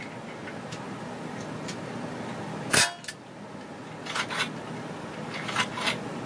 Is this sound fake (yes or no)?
no